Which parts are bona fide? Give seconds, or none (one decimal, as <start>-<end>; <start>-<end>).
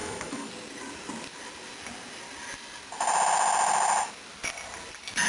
0.5-5.3